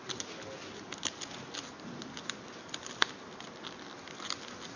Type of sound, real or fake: real